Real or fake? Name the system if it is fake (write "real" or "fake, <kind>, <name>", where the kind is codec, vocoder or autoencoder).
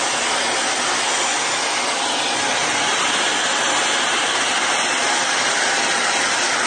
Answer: real